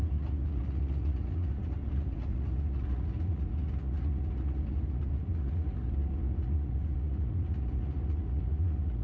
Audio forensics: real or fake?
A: fake